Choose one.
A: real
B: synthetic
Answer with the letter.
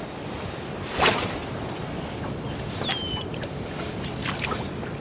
A